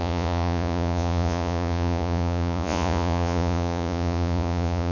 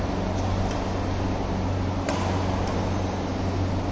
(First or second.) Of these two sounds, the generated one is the first